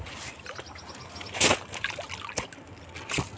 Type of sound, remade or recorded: recorded